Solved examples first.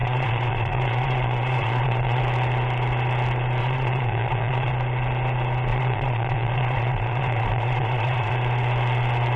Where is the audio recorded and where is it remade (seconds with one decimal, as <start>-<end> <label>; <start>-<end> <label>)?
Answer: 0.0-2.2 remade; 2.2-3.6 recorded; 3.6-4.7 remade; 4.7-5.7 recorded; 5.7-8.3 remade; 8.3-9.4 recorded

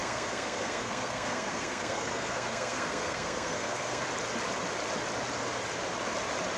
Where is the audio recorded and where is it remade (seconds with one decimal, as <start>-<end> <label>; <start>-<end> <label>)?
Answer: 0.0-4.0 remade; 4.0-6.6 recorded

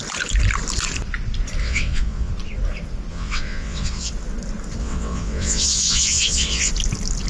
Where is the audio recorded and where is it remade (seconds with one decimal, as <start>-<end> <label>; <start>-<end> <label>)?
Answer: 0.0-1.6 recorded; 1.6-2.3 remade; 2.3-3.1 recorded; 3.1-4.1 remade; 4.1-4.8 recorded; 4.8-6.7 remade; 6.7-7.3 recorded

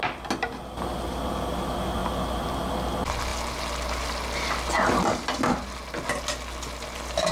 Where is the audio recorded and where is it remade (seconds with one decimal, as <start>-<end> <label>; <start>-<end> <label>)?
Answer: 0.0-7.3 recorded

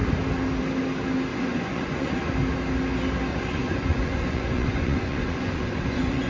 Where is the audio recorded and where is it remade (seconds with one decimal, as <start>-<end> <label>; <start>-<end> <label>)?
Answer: 0.0-1.3 recorded; 1.3-2.3 remade; 2.3-3.3 recorded; 3.3-6.3 remade

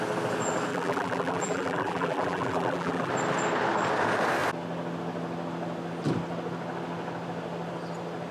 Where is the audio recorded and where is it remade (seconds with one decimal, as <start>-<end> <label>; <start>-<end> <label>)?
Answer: 0.0-0.7 recorded; 0.7-3.1 remade; 3.1-8.3 recorded